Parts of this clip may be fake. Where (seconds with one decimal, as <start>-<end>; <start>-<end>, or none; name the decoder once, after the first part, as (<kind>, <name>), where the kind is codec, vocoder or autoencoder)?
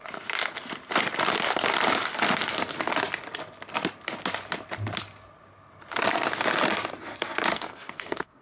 7.5-8.4 (codec, SNAC)